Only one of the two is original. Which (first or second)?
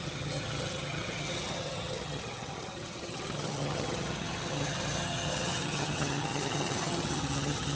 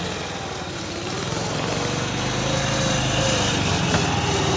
second